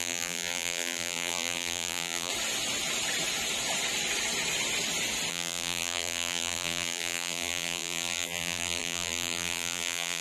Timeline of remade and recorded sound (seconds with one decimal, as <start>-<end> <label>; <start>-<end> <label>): 0.0-2.3 remade; 2.3-5.3 recorded; 5.3-10.2 remade